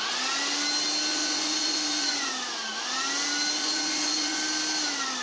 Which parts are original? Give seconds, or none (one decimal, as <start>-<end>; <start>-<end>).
0.0-1.1; 2.3-3.6; 4.4-5.2